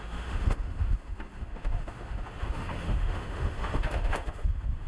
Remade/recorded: remade